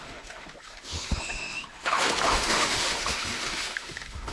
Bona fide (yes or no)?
no